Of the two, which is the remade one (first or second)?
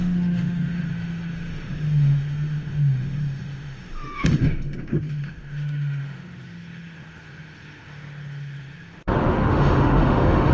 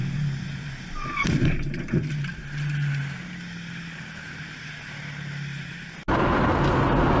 first